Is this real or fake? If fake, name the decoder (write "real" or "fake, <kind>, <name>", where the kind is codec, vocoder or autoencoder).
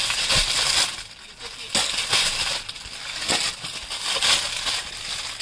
real